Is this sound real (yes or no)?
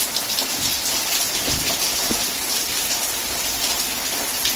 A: yes